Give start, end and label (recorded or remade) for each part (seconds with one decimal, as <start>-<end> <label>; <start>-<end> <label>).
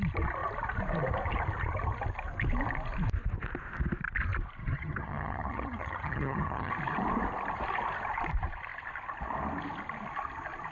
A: 0.0-4.6 recorded; 4.6-6.7 remade; 6.7-10.7 recorded